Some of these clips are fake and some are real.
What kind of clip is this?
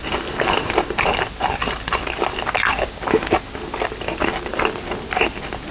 real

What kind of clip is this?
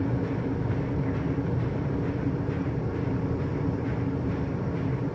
real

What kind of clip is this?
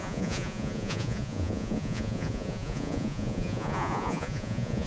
fake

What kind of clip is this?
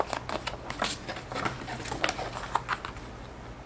real